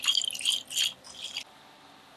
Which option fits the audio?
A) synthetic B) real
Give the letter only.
B